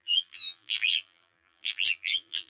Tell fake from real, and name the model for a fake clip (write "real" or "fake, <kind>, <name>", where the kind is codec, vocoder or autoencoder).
fake, vocoder, BigVGAN v2